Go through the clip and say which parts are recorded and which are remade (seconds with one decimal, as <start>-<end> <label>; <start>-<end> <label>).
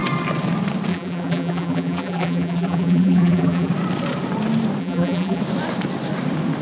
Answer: 0.0-0.9 recorded; 0.9-3.7 remade; 3.7-4.8 recorded; 4.8-5.4 remade; 5.4-6.6 recorded